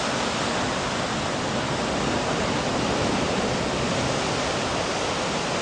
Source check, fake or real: real